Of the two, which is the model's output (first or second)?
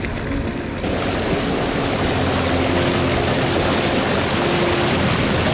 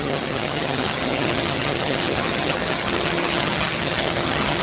second